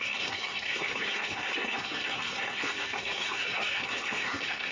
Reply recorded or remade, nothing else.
remade